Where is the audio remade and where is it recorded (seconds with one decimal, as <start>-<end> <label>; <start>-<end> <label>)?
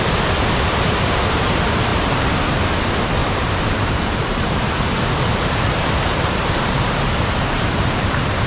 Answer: 0.0-1.9 recorded; 1.9-2.5 remade; 2.5-3.2 recorded; 3.2-8.5 remade